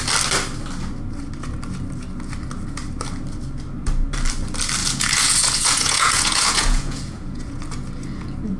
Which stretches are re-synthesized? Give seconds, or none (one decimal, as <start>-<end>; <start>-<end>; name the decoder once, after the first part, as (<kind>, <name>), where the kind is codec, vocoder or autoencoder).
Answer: 4.8-7.6 (vocoder, Vocos)